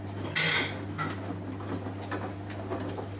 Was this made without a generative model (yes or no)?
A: yes